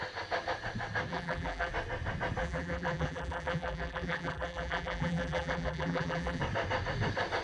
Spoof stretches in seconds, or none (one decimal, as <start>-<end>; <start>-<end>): 1.1-1.7; 2.4-6.4